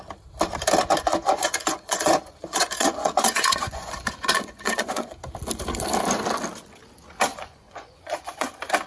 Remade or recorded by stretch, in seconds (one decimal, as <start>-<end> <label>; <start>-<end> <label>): 0.0-1.0 recorded; 1.0-5.2 remade; 5.2-7.3 recorded; 7.3-8.5 remade; 8.5-8.9 recorded